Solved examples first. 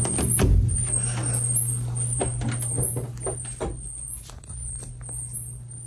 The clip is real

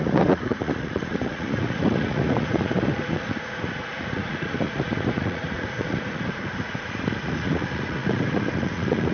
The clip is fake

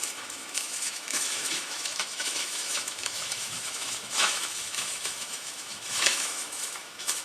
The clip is fake